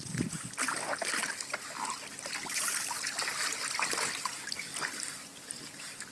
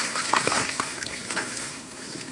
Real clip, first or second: first